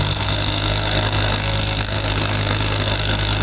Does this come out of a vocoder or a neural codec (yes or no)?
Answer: yes